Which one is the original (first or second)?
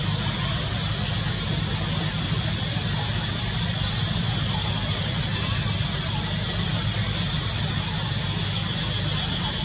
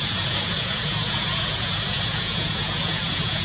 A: first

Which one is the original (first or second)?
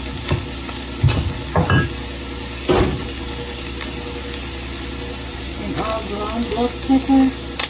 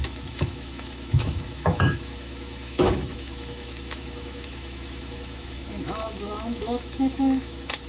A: first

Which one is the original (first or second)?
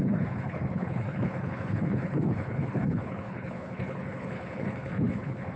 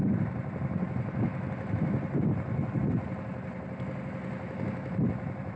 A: second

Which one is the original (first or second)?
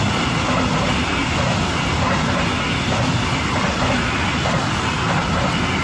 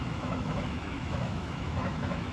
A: first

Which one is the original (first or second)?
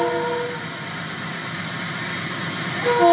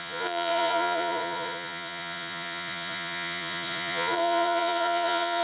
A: first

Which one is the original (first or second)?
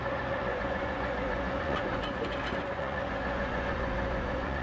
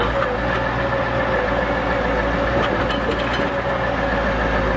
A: second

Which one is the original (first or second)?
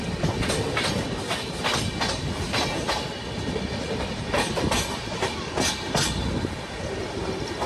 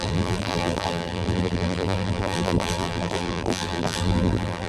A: first